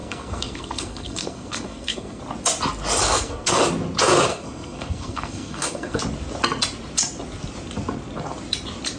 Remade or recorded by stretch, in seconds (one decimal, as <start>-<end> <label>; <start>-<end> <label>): 0.0-2.2 remade; 2.2-3.0 recorded; 3.0-3.6 remade; 3.6-4.3 recorded; 4.3-6.0 remade; 6.0-9.0 recorded